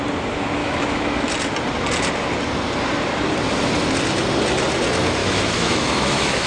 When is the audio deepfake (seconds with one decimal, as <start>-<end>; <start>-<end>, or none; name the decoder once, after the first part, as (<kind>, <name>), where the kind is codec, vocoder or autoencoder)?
0.6-1.3 (autoencoder, DAC-VAE); 5.2-6.5